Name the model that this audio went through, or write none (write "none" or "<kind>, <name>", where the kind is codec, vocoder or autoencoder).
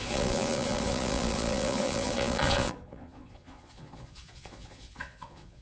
vocoder, Vocos